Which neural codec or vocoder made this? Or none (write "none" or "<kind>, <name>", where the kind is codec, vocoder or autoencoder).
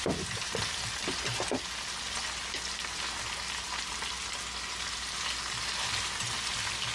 none